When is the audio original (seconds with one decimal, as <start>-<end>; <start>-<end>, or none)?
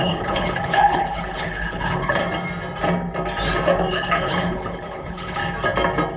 2.2-3.9; 5.4-6.2